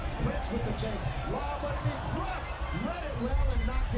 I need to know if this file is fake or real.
fake